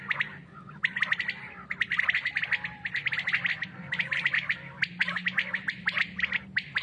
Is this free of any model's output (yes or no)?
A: yes